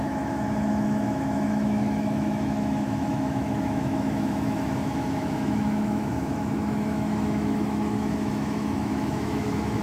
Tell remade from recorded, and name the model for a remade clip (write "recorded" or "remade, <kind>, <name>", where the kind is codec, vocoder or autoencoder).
remade, autoencoder, DAC-VAE